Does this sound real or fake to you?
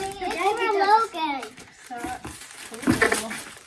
fake